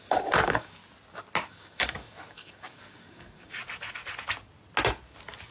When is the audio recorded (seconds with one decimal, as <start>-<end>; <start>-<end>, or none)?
0.8-1.5; 3.6-5.5